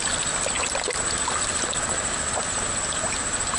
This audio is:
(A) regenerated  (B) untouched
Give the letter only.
B